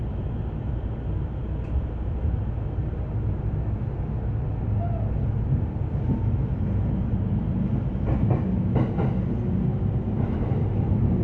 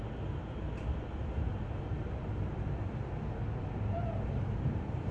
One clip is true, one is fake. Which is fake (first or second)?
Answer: second